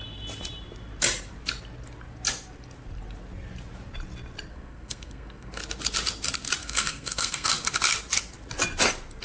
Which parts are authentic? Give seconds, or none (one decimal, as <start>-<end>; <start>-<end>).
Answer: 0.0-4.5; 5.6-6.6; 7.5-9.2